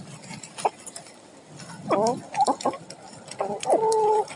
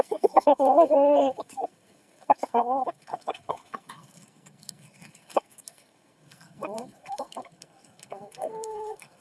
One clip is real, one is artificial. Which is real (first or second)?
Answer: first